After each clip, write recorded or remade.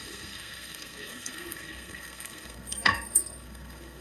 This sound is remade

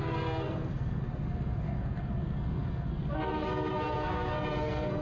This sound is remade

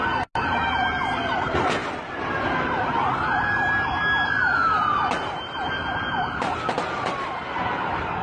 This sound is recorded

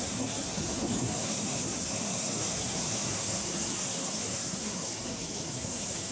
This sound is remade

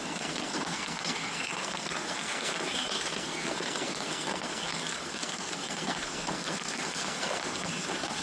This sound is remade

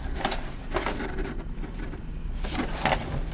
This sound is recorded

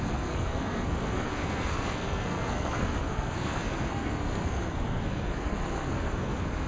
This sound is remade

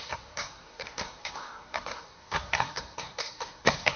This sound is remade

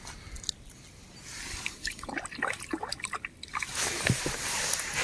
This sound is recorded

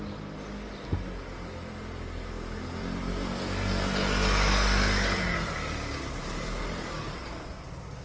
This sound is recorded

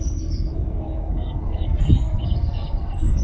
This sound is remade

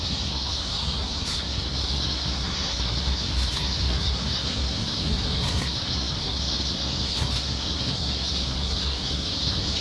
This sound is remade